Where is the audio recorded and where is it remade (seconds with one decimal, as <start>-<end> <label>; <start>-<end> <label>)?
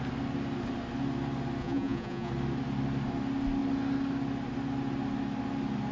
0.0-1.6 recorded; 1.6-2.3 remade; 2.3-5.9 recorded